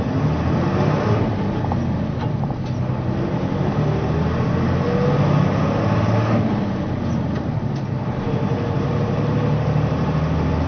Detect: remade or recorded recorded